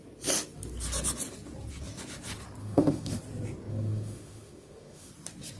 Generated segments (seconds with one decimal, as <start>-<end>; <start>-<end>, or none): 2.6-3.2; 3.7-5.1